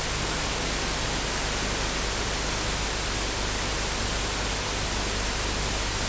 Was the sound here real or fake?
real